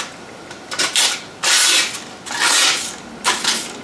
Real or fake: real